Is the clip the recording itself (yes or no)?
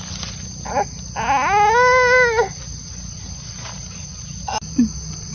yes